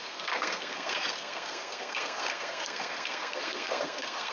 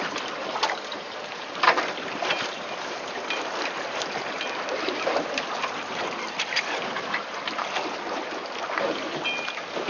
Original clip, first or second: second